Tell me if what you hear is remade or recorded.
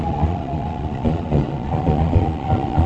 remade